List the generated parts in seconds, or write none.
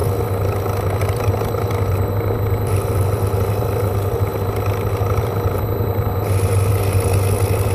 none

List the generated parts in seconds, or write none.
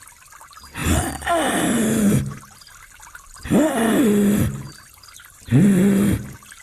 none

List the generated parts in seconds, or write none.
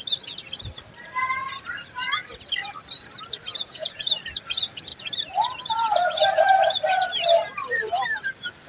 3.5-4.1 (vocoder, Vocos)